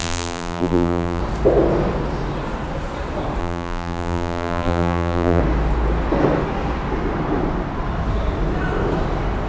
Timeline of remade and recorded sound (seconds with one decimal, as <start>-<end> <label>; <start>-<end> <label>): 0.0-1.2 remade; 1.2-3.4 recorded; 3.4-5.4 remade; 5.4-9.5 recorded